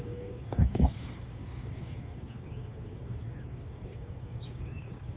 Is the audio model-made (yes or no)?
yes